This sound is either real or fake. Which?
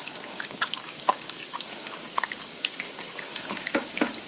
fake